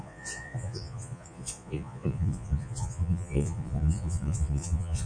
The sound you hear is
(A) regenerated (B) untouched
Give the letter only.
A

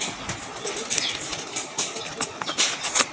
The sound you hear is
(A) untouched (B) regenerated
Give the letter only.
A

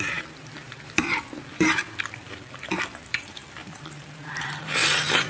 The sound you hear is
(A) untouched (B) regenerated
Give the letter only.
B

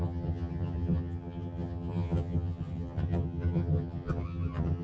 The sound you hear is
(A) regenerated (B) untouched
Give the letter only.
A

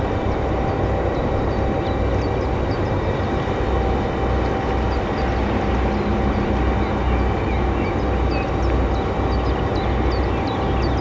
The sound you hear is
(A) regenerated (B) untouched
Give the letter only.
B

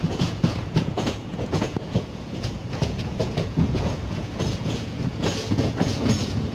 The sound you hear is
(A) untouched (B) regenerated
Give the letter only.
B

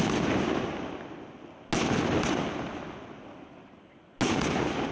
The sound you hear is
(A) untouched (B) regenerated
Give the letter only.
A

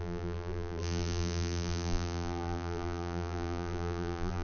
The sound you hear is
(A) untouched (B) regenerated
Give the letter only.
B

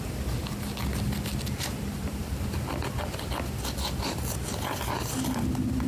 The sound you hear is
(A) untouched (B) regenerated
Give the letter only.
A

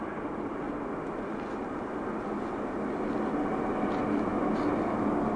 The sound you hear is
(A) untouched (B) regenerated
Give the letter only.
A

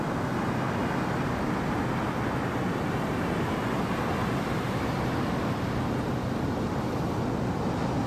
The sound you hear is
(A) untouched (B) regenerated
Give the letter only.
A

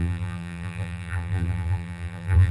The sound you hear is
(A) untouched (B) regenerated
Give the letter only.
B